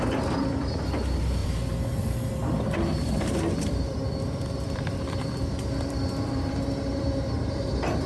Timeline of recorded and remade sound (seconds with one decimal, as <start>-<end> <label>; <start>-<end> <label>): 0.0-8.1 remade